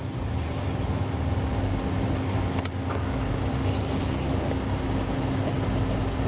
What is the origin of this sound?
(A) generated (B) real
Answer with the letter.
B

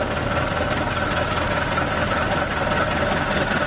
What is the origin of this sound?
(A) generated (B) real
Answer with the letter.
B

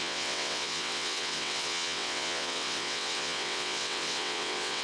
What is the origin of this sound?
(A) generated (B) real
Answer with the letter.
A